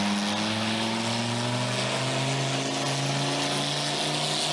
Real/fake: real